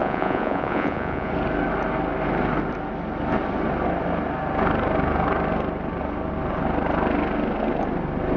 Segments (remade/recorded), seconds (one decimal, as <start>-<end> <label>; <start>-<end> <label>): 0.0-1.3 remade; 1.3-8.4 recorded